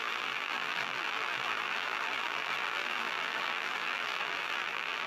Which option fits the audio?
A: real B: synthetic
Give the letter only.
B